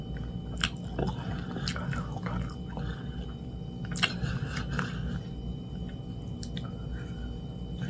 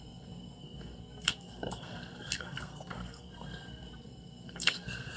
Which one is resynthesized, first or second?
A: second